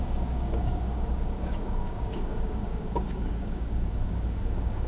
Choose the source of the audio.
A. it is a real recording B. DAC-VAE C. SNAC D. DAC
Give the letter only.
D